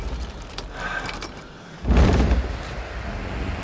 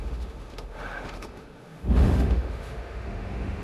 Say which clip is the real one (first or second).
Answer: first